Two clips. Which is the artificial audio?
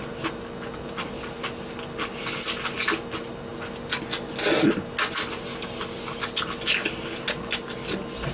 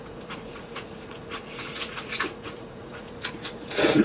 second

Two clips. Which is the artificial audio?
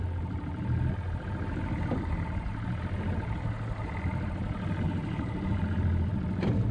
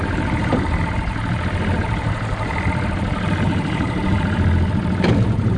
second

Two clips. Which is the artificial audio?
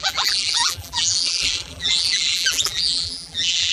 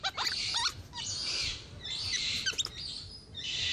first